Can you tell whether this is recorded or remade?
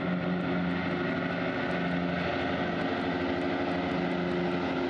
recorded